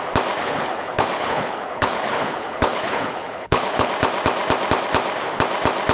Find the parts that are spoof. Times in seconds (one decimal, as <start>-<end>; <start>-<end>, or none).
0.4-3.9